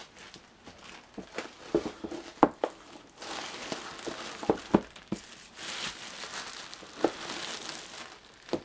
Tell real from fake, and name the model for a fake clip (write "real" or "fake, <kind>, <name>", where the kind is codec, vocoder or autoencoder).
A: real